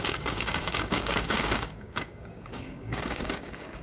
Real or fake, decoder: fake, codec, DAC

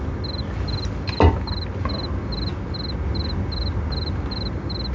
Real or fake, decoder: real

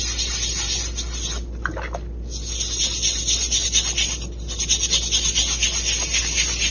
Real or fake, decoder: real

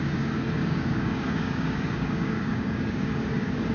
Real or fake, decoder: fake, codec, DAC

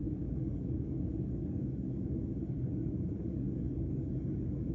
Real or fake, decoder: fake, codec, DAC